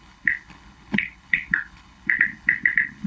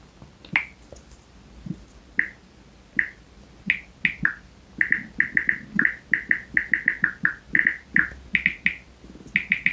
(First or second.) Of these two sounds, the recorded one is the second